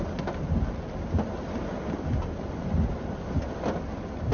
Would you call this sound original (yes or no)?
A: yes